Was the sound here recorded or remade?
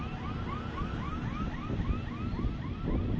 recorded